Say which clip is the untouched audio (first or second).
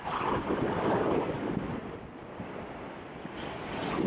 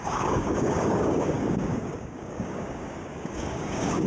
first